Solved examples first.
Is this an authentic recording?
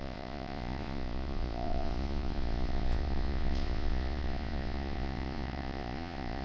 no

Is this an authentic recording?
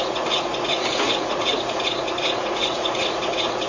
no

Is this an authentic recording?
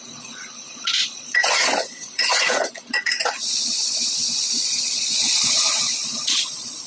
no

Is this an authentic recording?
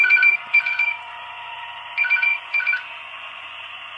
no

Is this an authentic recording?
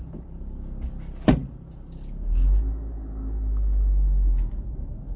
yes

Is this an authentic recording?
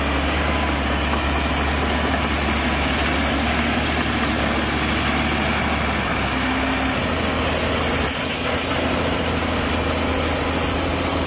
yes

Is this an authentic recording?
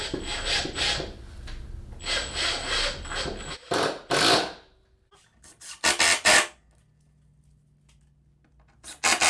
yes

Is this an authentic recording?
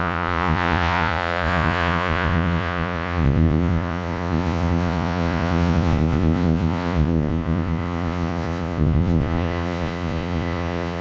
no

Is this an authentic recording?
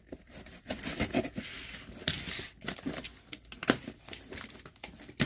yes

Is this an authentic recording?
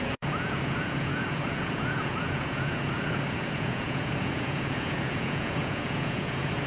no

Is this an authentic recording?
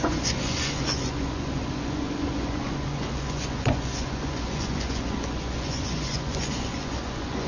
no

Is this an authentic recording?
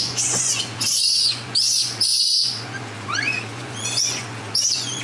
no